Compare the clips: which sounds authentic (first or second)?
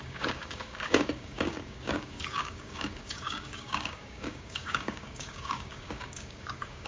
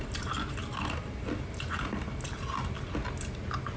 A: second